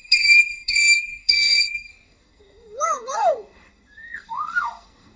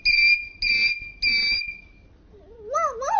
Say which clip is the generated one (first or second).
first